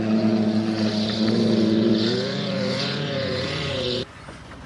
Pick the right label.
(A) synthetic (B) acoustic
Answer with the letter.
A